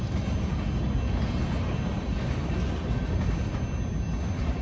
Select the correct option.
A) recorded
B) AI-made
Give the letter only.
A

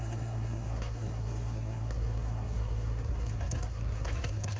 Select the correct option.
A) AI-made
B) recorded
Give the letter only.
A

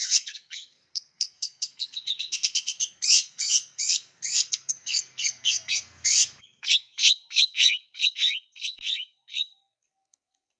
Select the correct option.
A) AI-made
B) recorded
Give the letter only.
A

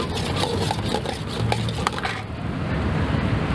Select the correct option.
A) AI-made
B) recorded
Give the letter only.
B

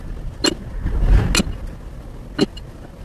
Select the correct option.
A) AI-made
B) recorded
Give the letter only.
B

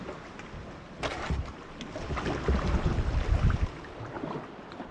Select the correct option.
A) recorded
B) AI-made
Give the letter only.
A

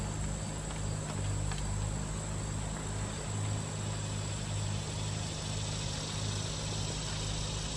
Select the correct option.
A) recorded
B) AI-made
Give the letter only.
A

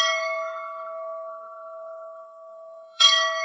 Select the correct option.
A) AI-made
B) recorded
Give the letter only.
A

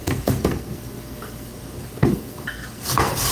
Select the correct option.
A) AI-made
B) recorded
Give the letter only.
A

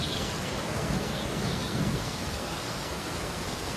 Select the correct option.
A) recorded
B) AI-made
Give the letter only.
B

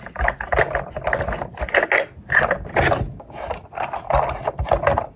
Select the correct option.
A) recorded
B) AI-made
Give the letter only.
A